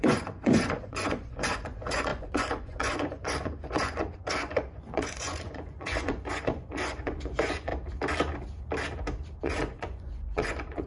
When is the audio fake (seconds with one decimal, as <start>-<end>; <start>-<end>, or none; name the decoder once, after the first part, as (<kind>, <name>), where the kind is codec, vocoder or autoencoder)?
0.0-7.7 (vocoder, Vocos); 9.4-10.9

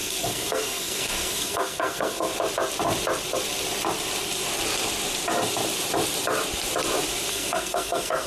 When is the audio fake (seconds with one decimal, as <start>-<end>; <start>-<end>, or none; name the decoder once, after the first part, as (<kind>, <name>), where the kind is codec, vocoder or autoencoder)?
0.0-2.3 (codec, SNAC); 7.3-8.3